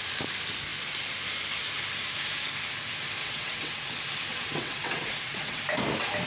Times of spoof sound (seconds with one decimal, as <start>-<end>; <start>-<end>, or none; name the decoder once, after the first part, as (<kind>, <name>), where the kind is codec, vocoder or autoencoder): 3.2-3.9 (vocoder, WaveNeXt); 4.3-5.6